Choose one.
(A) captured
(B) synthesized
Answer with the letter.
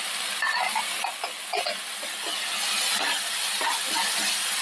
A